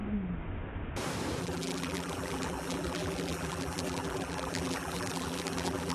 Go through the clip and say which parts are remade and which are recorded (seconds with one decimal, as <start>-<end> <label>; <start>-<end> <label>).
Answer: 0.0-1.4 recorded; 1.4-5.9 remade